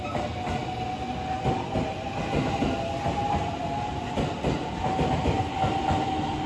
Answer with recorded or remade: recorded